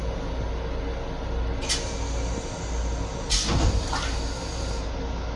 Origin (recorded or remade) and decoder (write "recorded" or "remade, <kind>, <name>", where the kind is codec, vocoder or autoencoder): recorded